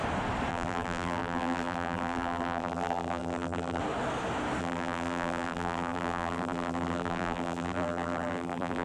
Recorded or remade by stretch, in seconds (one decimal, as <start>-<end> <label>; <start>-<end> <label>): 0.0-0.5 recorded; 0.5-3.8 remade; 3.8-4.6 recorded; 4.6-8.8 remade